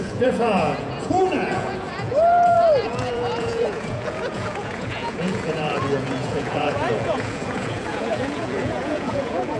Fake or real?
fake